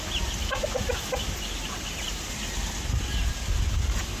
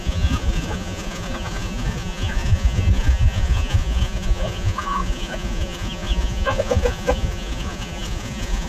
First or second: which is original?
first